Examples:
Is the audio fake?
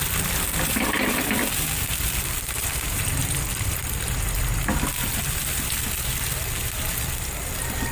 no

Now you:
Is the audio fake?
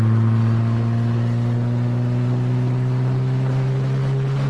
no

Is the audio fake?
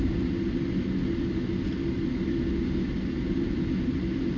no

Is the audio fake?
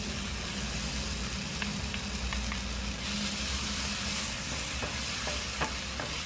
no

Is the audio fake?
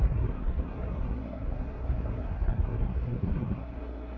yes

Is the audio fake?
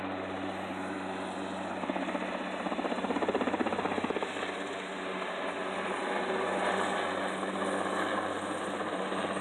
no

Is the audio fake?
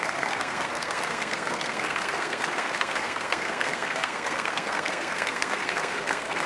yes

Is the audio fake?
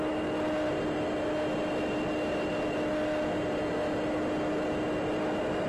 no